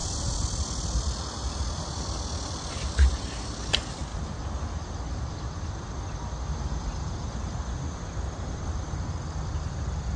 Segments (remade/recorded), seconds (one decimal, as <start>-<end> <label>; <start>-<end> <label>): 0.0-10.2 recorded